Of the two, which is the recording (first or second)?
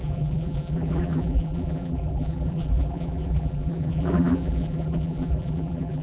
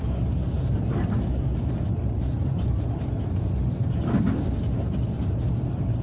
second